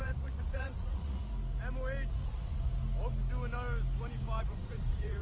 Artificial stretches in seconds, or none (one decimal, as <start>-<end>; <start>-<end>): 0.0-1.2; 2.1-2.7; 4.4-5.2